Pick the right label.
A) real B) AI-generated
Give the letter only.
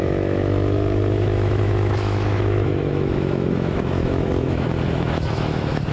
B